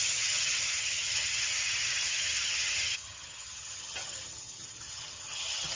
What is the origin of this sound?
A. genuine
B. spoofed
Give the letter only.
B